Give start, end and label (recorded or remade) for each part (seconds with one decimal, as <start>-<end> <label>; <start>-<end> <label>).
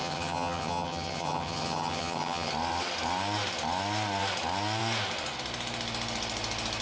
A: 0.0-2.5 remade; 2.5-6.8 recorded